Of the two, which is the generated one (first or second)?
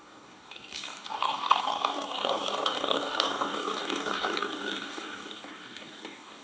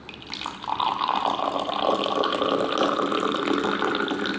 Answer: first